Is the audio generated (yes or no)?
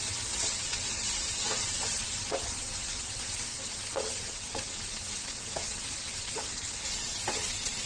yes